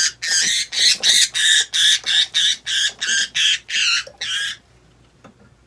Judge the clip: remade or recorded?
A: recorded